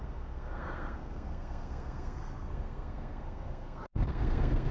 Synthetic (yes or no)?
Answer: yes